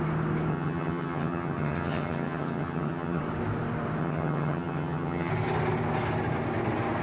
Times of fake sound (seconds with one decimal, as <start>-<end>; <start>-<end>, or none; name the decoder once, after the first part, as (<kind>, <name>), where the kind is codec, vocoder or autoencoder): 0.5-3.2 (vocoder, HiFi-GAN); 4.0-5.3